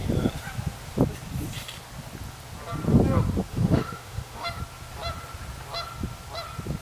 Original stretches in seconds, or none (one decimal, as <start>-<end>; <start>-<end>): 0.0-3.5; 4.6-6.8